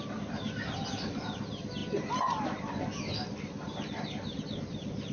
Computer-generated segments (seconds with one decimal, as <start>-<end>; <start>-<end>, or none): none